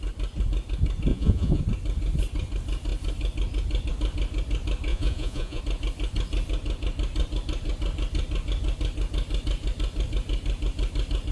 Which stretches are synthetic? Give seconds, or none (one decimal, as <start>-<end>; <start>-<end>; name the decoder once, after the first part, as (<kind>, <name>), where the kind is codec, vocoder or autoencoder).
1.1-1.6 (vocoder, Vocos); 4.9-5.6

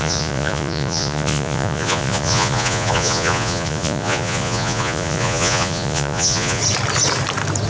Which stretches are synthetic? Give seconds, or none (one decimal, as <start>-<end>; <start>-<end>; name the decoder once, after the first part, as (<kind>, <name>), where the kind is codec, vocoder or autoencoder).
0.0-6.6 (vocoder, Vocos)